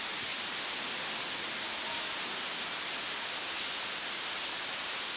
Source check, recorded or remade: recorded